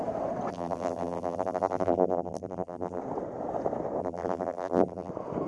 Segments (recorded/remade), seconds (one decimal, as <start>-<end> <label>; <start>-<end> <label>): 0.0-0.5 recorded; 0.5-3.0 remade; 3.0-4.0 recorded; 4.0-5.1 remade; 5.1-5.5 recorded